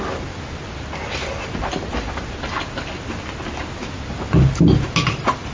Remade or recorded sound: recorded